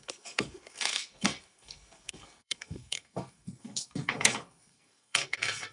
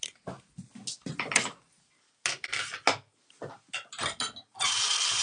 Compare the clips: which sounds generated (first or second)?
first